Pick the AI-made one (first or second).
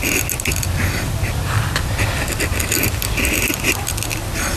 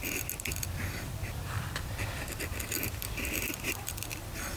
second